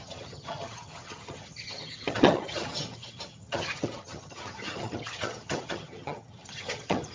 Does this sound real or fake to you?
fake